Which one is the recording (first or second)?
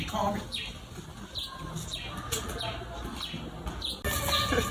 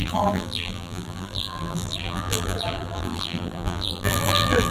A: first